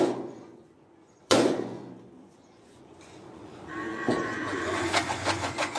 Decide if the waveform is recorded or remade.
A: remade